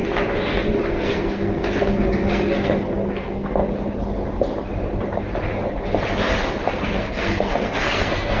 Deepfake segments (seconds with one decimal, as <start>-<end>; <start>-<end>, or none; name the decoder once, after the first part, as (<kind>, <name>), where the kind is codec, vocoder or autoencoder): 0.9-3.6 (codec, SNAC); 6.7-8.4